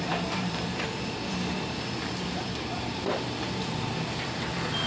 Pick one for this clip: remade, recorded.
remade